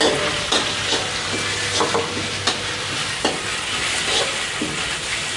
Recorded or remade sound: recorded